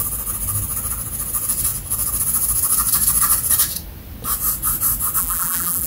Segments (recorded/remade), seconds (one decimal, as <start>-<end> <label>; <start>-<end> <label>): 0.0-5.2 recorded; 5.2-5.9 remade